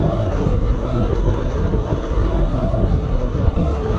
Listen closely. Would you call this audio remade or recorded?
remade